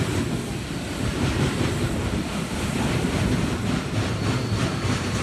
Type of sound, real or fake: real